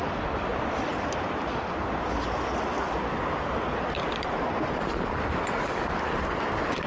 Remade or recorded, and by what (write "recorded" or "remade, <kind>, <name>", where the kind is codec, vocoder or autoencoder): recorded